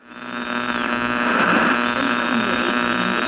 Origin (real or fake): fake